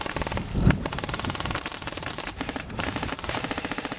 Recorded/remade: remade